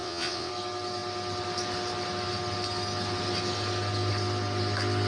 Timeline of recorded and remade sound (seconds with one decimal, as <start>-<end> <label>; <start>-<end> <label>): 0.0-0.5 remade; 0.5-5.1 recorded